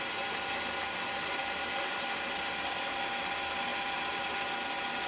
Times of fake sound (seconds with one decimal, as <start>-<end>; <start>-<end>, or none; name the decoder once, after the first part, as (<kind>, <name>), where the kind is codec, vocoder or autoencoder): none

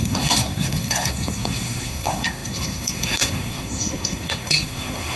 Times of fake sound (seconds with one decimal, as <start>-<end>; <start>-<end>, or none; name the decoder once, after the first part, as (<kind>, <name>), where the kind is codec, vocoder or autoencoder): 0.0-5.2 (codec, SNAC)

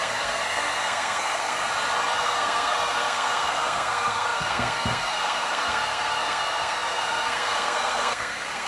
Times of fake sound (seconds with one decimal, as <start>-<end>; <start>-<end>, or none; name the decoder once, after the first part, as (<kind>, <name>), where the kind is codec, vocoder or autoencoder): 0.0-1.6 (codec, SNAC); 2.2-8.7

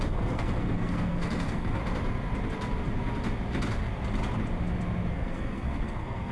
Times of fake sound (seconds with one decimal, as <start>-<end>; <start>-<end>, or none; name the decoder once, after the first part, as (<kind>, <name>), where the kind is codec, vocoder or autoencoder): 0.0-1.8 (codec, SNAC); 5.1-6.3

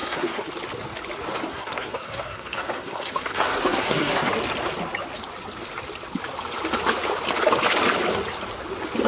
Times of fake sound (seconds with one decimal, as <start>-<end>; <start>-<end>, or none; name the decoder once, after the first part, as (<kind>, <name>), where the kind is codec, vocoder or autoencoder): 0.0-0.5 (codec, SNAC); 1.5-4.3

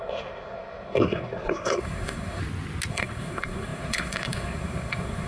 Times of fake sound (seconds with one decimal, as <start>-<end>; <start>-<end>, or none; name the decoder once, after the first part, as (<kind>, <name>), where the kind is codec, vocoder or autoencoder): 0.0-2.4 (codec, SNAC); 2.9-5.3